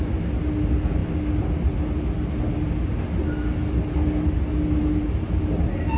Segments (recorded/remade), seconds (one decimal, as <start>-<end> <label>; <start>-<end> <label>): 0.0-6.0 recorded

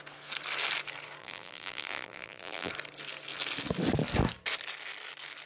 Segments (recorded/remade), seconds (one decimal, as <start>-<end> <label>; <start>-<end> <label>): 0.0-1.2 recorded; 1.2-2.7 remade; 2.7-5.5 recorded